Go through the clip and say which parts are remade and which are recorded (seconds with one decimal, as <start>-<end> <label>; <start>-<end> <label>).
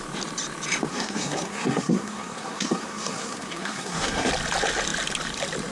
0.0-0.9 recorded; 0.9-4.3 remade; 4.3-5.7 recorded